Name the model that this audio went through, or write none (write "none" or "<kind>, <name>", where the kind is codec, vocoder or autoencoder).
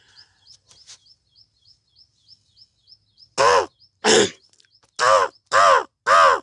none